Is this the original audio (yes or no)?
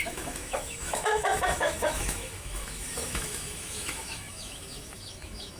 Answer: no